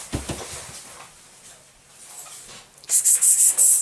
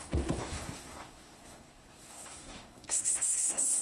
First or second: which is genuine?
first